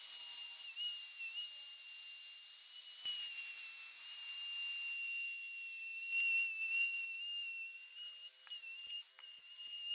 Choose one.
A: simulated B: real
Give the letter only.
B